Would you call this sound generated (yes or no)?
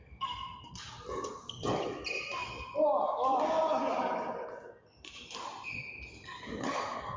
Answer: no